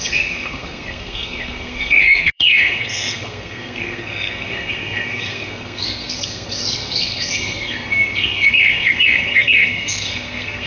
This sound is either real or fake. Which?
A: fake